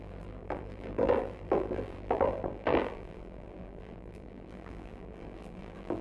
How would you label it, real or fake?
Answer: fake